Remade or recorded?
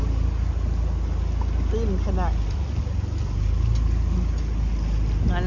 recorded